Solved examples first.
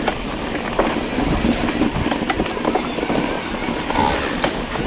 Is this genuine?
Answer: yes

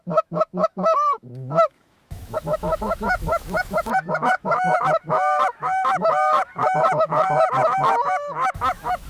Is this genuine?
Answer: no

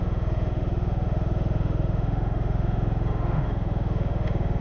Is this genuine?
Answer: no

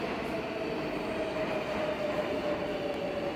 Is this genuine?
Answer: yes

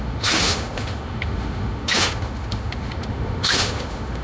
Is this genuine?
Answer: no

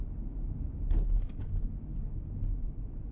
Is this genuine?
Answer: yes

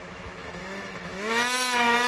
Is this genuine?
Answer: no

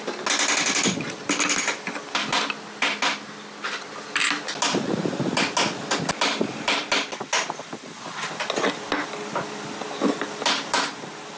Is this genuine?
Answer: yes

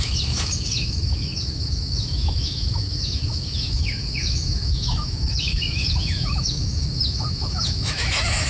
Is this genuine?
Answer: no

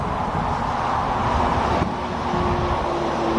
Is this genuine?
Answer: yes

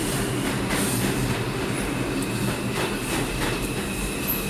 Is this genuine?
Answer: yes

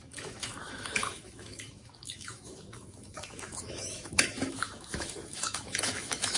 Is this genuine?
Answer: no